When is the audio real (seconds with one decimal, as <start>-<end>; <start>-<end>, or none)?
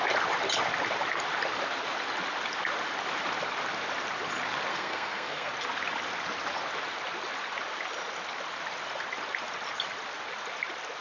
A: 0.0-4.7; 5.5-11.0